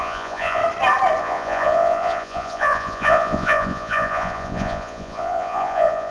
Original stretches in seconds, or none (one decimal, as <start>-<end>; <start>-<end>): 0.6-1.2